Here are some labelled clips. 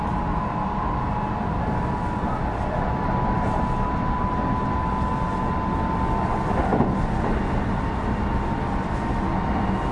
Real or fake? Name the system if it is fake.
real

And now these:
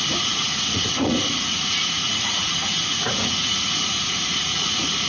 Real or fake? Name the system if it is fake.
fake, vocoder, Vocos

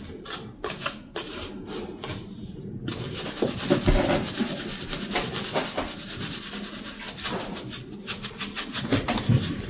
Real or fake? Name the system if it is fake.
real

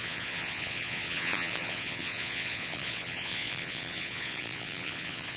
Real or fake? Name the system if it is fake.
fake, vocoder, Vocos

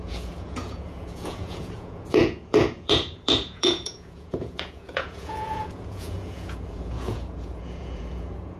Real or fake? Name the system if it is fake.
fake, vocoder, Vocos